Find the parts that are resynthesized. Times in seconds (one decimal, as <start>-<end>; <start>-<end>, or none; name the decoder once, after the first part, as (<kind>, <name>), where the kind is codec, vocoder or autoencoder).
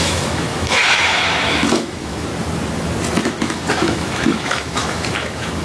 0.0-2.3 (autoencoder, DAC-VAE); 3.2-5.6